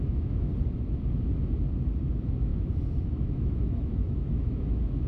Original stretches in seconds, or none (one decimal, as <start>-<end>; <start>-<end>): 0.5-2.0